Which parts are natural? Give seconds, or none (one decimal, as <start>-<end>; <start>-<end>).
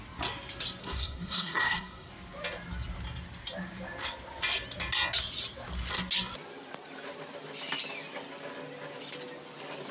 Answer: 0.0-0.8; 2.1-9.9